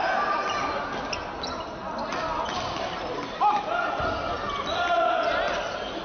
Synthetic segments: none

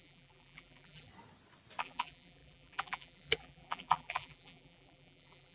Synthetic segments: 0.0-1.1 (vocoder, BigVGAN v2); 1.8-5.5